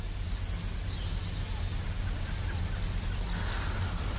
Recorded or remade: recorded